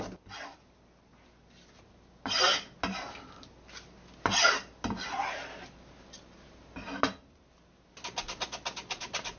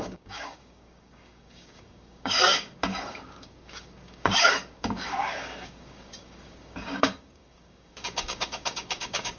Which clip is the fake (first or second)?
second